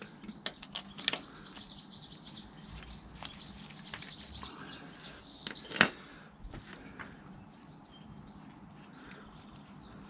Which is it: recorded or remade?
recorded